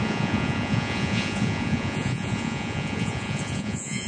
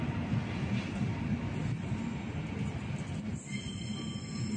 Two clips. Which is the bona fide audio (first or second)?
second